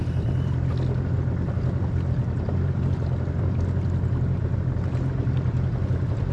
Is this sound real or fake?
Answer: real